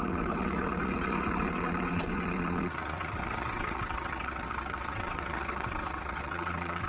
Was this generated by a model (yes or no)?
yes